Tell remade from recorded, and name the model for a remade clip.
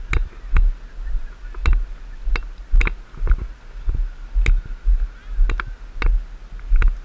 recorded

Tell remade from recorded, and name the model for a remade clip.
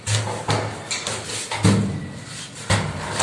recorded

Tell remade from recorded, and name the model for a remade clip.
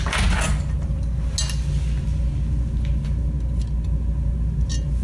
recorded